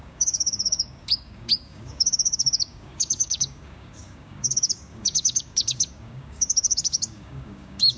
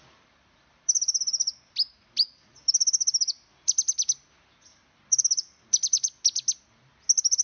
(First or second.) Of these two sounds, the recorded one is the second